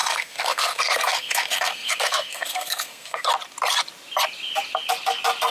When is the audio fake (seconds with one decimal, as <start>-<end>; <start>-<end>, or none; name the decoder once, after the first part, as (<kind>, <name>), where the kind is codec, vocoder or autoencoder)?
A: 0.0-3.3 (codec, SNAC)